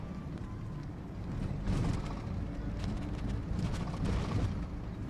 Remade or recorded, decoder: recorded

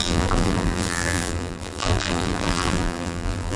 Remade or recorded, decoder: remade, vocoder, BigVGAN v2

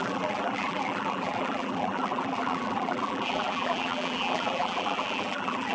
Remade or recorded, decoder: remade, vocoder, BigVGAN v2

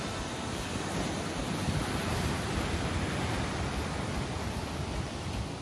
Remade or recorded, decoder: remade, vocoder, BigVGAN v2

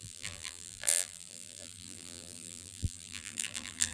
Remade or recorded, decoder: remade, vocoder, BigVGAN v2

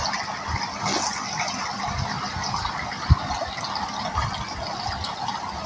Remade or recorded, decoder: recorded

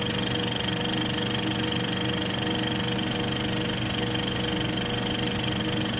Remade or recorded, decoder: recorded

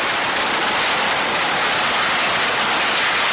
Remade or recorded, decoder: recorded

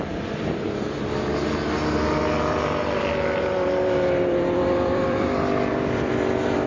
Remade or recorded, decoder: remade, vocoder, BigVGAN v2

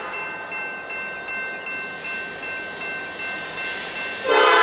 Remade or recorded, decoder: recorded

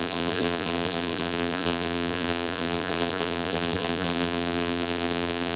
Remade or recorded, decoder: remade, vocoder, BigVGAN v2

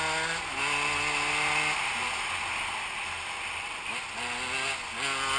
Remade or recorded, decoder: recorded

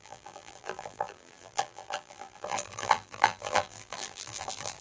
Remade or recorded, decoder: remade, vocoder, BigVGAN v2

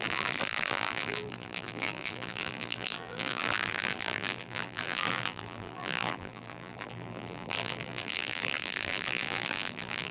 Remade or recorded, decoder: remade, vocoder, BigVGAN v2